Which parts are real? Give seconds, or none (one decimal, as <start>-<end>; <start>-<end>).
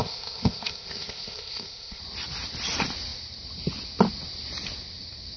2.0-5.4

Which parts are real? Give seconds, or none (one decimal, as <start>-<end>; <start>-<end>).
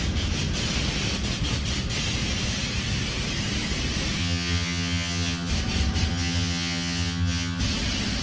0.0-4.2; 5.5-6.1; 7.6-8.2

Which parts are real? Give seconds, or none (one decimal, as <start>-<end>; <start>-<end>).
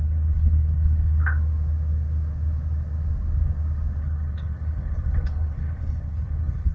1.2-4.0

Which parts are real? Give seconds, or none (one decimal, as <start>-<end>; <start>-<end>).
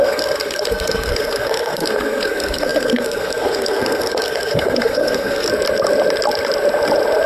5.5-7.3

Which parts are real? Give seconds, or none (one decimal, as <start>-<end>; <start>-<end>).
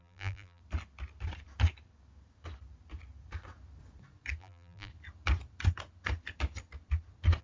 0.6-4.4; 4.9-7.4